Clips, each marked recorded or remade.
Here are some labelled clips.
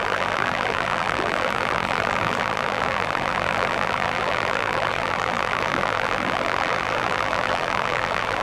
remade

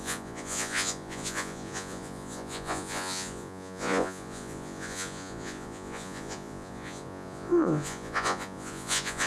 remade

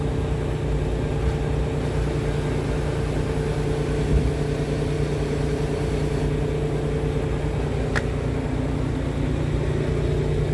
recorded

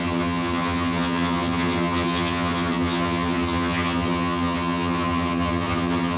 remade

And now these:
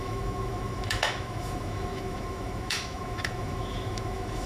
remade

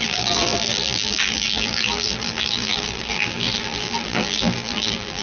remade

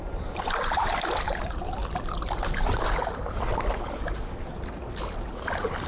recorded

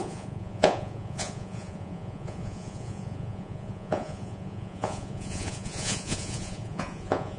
remade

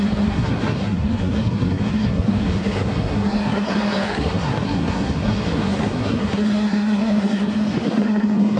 remade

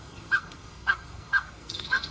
remade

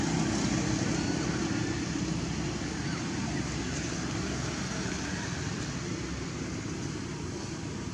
remade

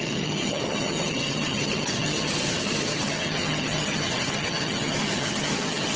remade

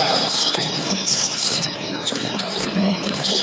remade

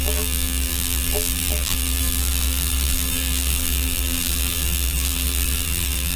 remade